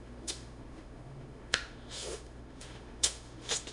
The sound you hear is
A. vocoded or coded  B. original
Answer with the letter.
A